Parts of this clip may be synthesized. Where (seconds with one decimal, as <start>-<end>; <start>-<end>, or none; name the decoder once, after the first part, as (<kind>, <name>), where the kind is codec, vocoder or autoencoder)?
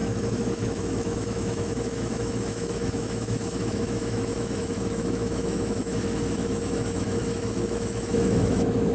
0.0-8.9 (autoencoder, DAC-VAE)